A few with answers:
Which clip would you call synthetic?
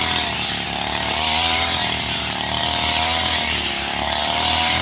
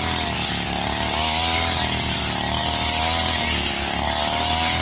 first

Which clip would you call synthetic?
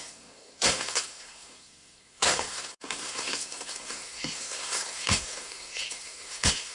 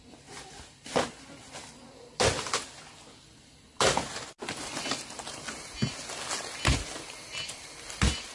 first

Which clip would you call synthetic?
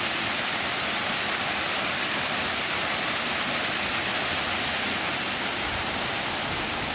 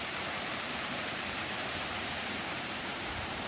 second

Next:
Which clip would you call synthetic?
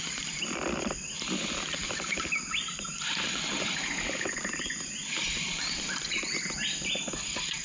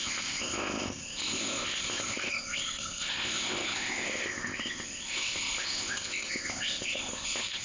second